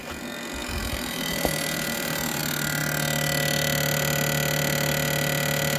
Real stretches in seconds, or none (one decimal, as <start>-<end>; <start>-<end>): 0.0-0.6; 2.4-5.8